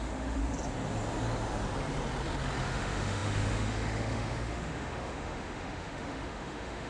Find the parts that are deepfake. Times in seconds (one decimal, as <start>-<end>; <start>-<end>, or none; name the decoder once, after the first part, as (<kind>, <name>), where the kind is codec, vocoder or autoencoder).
0.0-0.4 (autoencoder, DAC-VAE); 2.6-6.9